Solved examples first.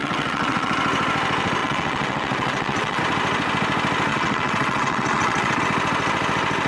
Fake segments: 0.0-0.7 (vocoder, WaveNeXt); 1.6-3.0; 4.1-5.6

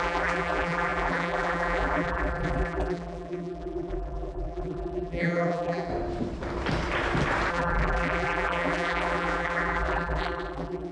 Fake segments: 0.0-5.9 (vocoder, BigVGAN v2); 7.5-10.9

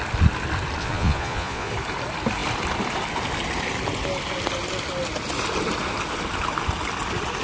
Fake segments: 0.8-1.7 (vocoder, Vocos)

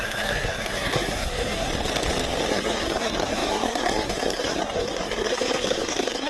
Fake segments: 0.0-1.7 (codec, SNAC); 2.5-6.3

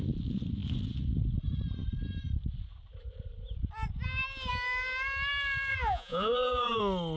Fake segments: 5.7-6.8 (vocoder, Vocos)

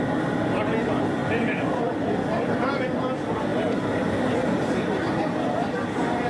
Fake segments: none

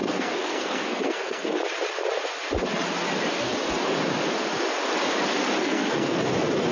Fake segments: 0.0-1.6 (codec, SNAC); 5.6-6.2

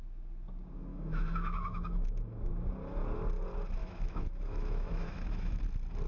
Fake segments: 0.9-2.5 (autoencoder, DAC-VAE); 3.8-5.6